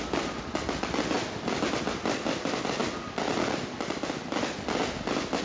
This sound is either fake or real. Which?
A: real